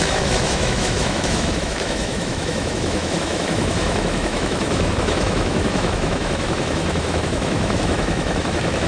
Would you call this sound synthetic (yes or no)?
yes